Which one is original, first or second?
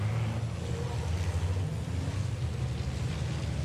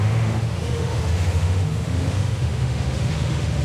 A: first